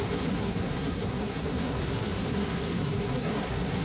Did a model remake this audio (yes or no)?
yes